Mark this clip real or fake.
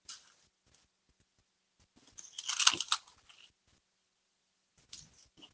real